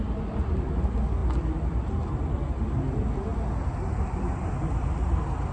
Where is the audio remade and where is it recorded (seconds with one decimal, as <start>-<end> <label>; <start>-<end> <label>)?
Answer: 0.0-5.5 recorded